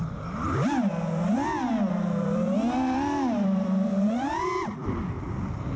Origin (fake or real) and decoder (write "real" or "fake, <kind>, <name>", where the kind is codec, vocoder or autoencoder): fake, vocoder, BigVGAN v2